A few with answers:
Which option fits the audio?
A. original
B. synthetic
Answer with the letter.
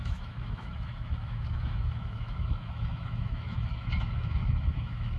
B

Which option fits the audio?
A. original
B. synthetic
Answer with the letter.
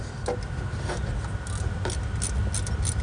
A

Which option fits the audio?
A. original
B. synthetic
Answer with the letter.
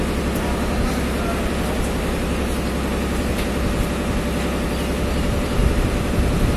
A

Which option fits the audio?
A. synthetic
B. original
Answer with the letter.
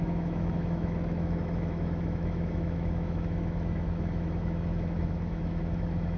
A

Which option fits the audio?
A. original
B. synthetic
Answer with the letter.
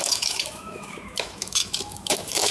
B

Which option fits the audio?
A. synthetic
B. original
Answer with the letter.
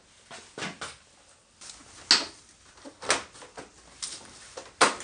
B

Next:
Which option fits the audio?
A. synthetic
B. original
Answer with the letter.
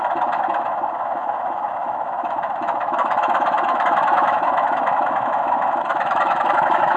A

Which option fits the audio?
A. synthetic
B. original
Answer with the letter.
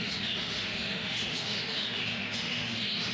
A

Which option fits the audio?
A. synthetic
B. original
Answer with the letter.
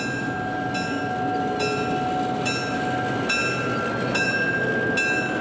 B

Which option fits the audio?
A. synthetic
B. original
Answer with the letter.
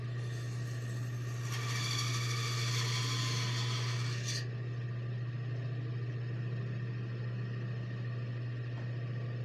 B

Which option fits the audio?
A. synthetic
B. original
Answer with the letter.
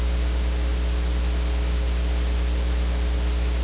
B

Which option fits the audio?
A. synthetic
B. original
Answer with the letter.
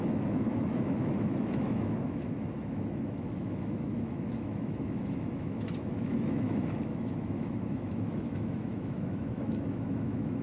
A